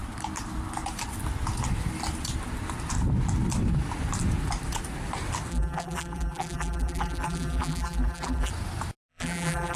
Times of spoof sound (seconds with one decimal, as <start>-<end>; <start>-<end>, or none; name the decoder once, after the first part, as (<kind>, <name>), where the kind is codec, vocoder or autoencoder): 5.5-8.5 (vocoder, BigVGAN v2); 9.1-9.8